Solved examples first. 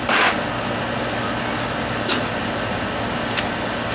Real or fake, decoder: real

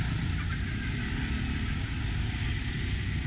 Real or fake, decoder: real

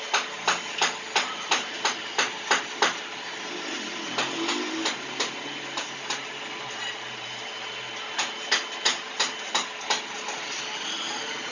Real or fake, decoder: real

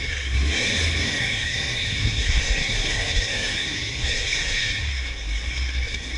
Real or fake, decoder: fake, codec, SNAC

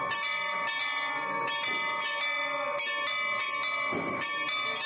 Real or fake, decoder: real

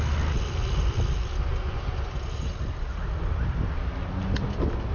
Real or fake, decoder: real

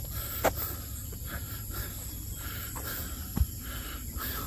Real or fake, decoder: real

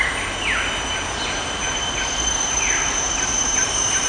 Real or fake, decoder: real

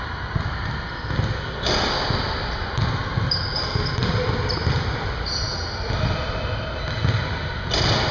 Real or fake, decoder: real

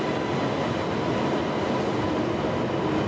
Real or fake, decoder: real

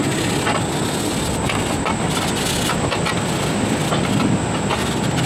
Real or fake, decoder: real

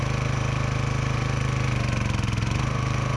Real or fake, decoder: fake, vocoder, BigVGAN v2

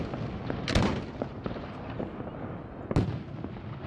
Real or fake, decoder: real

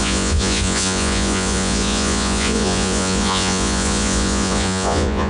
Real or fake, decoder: fake, vocoder, Vocos